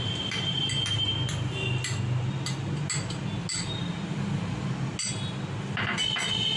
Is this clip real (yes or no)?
yes